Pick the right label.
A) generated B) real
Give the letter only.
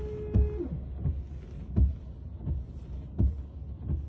B